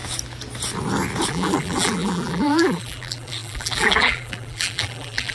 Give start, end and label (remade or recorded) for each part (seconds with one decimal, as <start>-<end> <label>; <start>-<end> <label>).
0.0-1.3 recorded; 1.3-5.3 remade